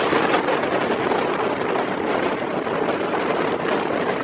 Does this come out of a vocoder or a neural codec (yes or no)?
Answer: no